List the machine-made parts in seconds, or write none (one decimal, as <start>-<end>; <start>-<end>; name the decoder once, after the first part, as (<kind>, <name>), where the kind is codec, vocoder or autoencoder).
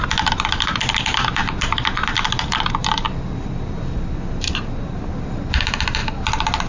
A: none